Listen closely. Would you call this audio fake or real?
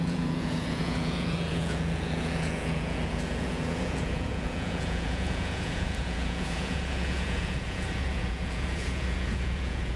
fake